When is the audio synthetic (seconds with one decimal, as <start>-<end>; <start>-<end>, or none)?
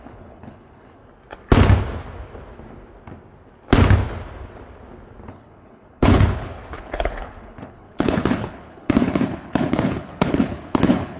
0.0-1.0; 5.3-11.2